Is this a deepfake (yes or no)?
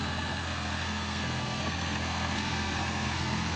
yes